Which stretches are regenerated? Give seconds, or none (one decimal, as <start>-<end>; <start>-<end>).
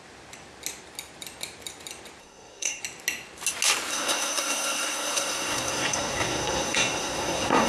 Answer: 2.2-2.8; 3.9-7.7